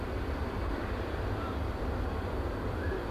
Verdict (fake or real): real